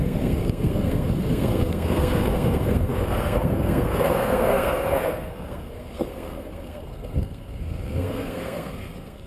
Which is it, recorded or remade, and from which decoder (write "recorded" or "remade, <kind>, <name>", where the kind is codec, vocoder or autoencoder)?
remade, codec, SNAC